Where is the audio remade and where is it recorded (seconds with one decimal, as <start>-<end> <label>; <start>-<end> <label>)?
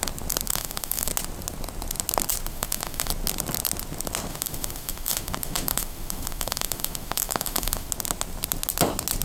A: 0.0-0.5 recorded; 0.5-1.1 remade; 1.1-2.5 recorded; 2.5-3.1 remade; 3.1-4.3 recorded; 4.3-7.9 remade; 7.9-9.2 recorded